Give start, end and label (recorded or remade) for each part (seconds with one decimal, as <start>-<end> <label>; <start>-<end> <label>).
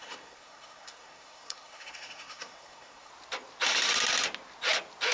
0.0-3.1 remade; 3.1-5.1 recorded